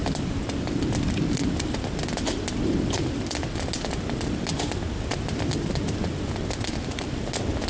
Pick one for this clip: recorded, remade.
recorded